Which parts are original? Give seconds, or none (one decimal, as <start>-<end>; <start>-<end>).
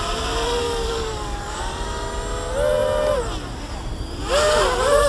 0.0-0.6; 1.6-5.1